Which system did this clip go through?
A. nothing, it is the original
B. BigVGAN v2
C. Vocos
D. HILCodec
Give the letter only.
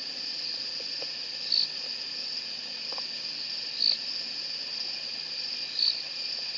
A